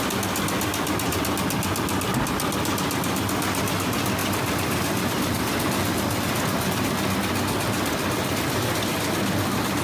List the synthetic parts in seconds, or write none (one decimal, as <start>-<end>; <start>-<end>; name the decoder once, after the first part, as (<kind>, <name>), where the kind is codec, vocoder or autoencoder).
4.2-6.7 (vocoder, BigVGAN v2)